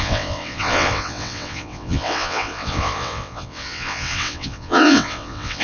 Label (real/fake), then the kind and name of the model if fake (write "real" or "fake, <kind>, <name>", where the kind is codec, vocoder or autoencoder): fake, vocoder, WaveNeXt